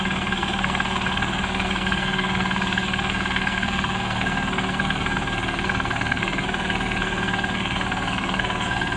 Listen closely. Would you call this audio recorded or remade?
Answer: remade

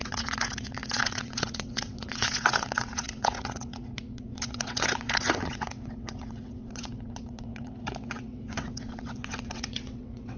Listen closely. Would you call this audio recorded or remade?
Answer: remade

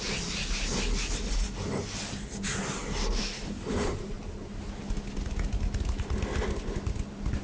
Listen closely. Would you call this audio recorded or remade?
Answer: recorded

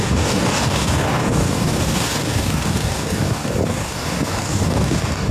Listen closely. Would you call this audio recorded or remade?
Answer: remade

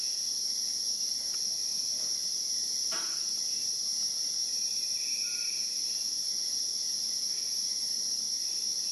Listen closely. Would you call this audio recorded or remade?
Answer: recorded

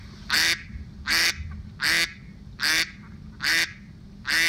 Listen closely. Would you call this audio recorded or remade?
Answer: recorded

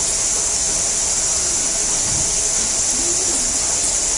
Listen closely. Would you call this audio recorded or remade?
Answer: recorded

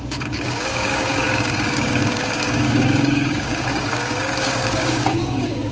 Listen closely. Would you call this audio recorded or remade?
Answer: remade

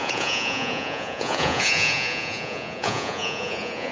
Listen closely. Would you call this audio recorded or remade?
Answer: remade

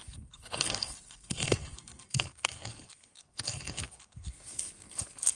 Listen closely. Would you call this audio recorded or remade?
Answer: remade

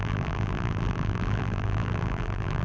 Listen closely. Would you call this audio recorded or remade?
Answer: remade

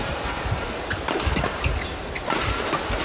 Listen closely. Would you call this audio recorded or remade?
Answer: recorded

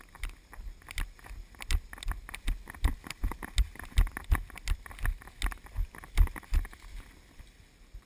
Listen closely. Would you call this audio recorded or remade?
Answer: recorded